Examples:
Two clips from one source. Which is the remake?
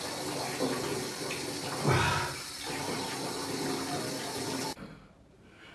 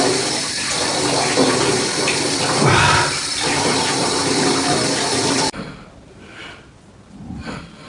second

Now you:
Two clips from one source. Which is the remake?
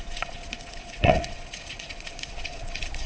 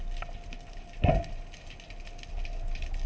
first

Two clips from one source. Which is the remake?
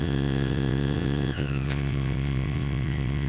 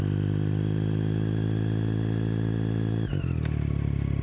first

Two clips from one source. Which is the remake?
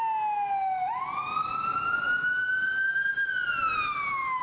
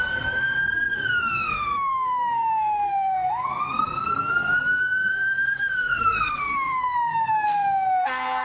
second